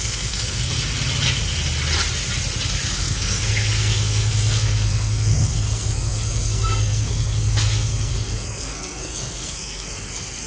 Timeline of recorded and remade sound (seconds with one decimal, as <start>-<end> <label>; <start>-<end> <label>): 0.0-0.7 remade; 0.7-2.9 recorded; 2.9-10.5 remade